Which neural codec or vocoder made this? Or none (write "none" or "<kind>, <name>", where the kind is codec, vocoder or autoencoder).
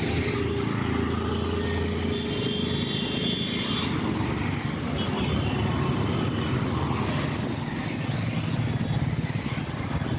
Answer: none